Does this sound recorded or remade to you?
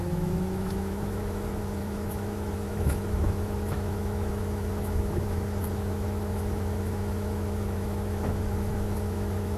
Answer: remade